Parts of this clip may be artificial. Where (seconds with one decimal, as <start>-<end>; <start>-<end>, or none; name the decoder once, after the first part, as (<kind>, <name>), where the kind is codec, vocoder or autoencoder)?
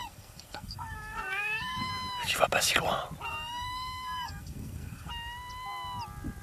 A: 0.0-1.9 (codec, SNAC); 3.3-5.1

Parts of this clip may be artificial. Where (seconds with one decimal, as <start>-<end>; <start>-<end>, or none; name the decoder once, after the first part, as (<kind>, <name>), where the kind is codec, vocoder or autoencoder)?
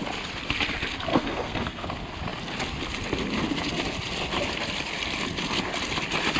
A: 1.1-1.8 (codec, SNAC)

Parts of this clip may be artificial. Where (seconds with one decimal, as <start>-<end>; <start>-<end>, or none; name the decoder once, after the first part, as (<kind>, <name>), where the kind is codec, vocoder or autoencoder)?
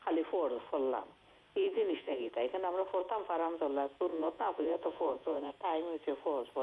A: 1.6-2.3 (vocoder, Vocos); 4.1-5.5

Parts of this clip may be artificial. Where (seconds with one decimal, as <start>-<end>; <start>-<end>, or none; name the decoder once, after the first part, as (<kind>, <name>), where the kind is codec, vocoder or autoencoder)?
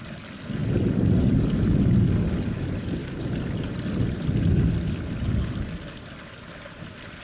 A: none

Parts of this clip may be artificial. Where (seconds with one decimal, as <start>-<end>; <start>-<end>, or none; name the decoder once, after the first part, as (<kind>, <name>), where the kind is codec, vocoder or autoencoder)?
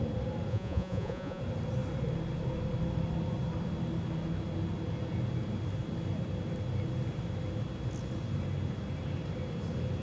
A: 0.5-1.4 (vocoder, Vocos)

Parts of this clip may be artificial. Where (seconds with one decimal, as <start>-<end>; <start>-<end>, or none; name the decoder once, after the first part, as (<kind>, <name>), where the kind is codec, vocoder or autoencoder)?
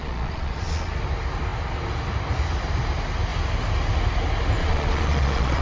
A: 0.0-0.9 (vocoder, Vocos); 4.6-5.6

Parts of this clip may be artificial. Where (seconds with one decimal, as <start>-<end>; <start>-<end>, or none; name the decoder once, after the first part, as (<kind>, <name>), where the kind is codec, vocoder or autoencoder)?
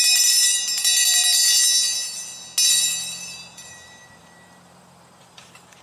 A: 0.0-1.4 (vocoder, BigVGAN v2); 2.7-5.8